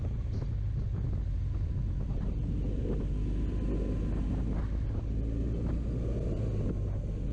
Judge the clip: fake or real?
real